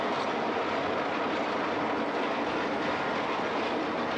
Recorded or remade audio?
recorded